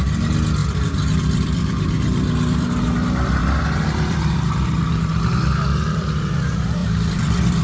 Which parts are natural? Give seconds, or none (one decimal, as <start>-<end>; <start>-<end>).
0.0-0.6; 2.8-3.4; 4.8-6.8